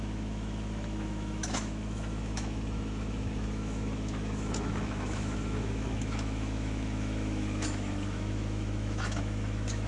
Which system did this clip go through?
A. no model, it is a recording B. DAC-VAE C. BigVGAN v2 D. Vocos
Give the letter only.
B